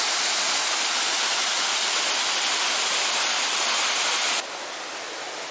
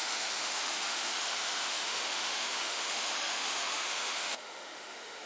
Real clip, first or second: first